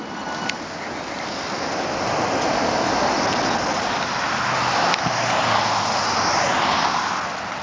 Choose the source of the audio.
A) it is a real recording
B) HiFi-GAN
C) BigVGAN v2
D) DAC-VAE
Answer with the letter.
A